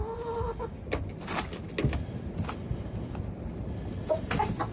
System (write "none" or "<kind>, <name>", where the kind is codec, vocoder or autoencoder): none